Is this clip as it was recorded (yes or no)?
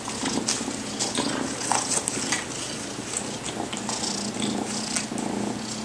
yes